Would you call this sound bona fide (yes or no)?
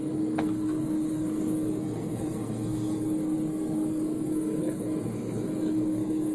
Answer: no